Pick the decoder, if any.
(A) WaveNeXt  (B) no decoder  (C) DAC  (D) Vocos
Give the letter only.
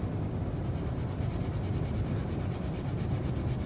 B